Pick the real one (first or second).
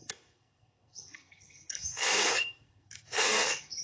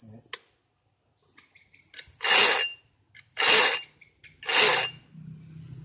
second